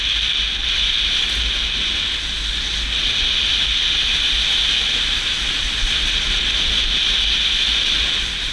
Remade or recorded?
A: recorded